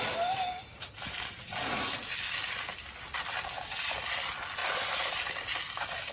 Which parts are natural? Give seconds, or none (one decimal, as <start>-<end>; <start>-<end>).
0.0-6.1